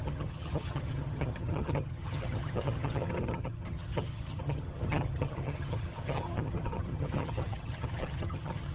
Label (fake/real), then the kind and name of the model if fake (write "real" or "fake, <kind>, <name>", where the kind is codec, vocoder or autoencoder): fake, vocoder, HiFi-GAN